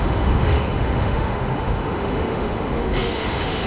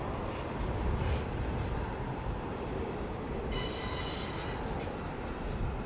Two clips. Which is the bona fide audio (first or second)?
second